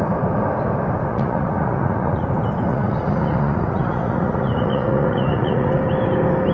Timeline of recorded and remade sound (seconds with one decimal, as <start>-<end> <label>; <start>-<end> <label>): 0.0-1.1 recorded; 1.1-2.3 remade; 2.3-2.7 recorded; 2.7-5.8 remade; 5.8-6.5 recorded